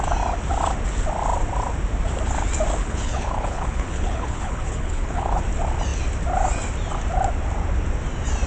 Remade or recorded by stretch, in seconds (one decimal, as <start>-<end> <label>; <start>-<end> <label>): 0.0-2.8 recorded; 2.8-5.4 remade; 5.4-8.5 recorded